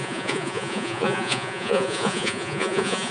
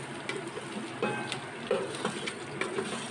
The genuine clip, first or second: second